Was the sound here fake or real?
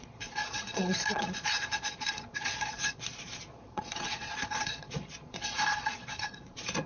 fake